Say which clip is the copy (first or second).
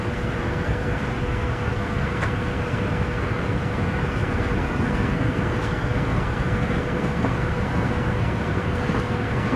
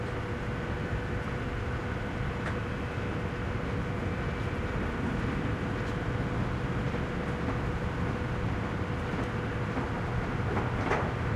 first